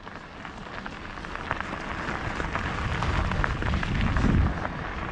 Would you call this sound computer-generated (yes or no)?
no